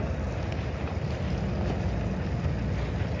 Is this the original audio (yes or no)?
yes